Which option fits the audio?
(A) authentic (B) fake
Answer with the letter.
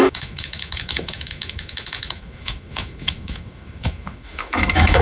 B